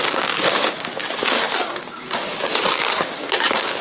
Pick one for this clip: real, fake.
fake